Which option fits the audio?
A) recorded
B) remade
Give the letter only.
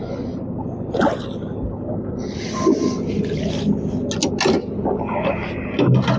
A